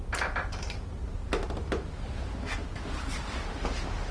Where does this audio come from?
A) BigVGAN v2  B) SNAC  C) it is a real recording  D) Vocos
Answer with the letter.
C